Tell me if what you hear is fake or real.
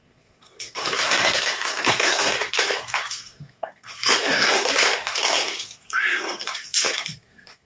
fake